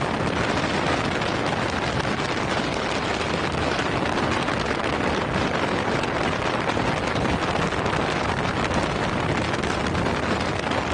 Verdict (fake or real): real